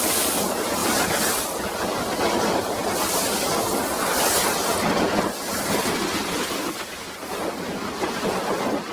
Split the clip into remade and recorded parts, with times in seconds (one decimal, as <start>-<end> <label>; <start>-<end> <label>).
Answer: 0.0-8.9 recorded